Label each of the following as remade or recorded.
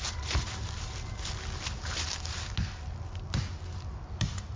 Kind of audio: recorded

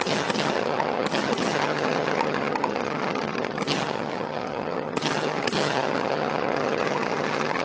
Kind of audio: remade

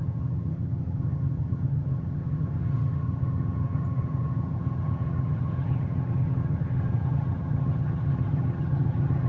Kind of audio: remade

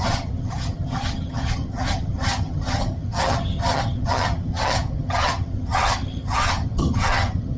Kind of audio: remade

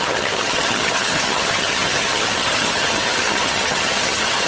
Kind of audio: remade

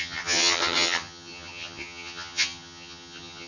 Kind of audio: remade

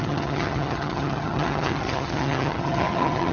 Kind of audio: remade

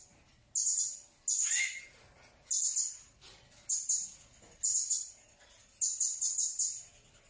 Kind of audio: recorded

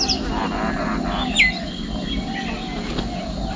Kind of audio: recorded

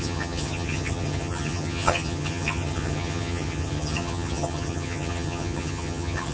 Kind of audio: remade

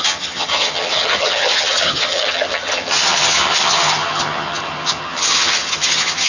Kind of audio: remade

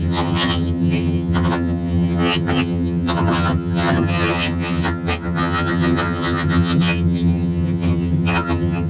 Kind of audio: remade